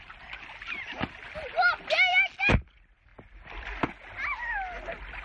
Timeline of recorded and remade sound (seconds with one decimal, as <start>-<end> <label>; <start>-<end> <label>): 0.0-5.2 recorded